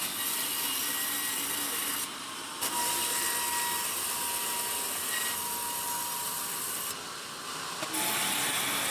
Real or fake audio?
real